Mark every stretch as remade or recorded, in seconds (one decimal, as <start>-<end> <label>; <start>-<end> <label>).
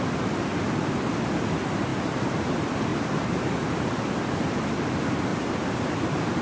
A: 0.0-5.3 recorded; 5.3-6.4 remade